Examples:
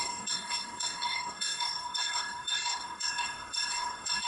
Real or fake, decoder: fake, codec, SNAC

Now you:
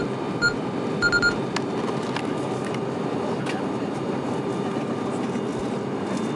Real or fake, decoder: real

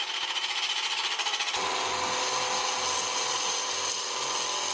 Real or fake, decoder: real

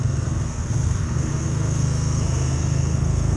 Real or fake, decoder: fake, codec, SNAC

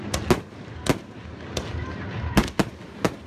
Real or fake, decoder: real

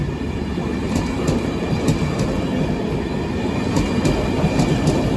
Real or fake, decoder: real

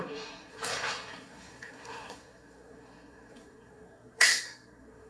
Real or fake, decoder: fake, codec, SNAC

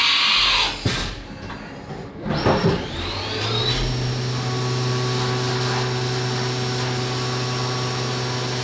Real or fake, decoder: real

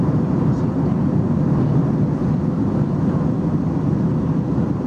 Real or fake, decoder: real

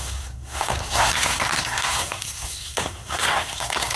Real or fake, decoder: fake, codec, SNAC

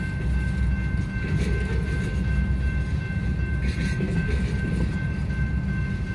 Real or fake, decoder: real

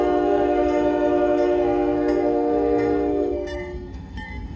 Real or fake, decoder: fake, codec, SNAC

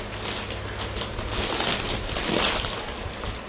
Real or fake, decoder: real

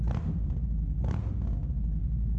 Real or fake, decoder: real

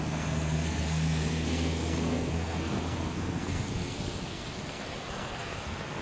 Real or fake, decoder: fake, codec, SNAC